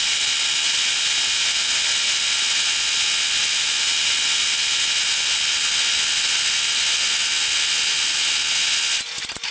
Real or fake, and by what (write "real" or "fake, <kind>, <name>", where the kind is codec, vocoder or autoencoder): real